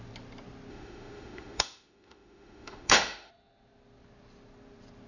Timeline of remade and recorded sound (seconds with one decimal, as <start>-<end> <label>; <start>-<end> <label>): 0.0-0.7 recorded; 0.7-3.3 remade; 3.3-5.1 recorded